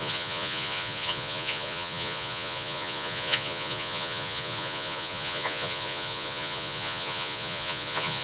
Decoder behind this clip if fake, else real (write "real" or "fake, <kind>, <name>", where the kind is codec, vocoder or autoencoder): fake, vocoder, Vocos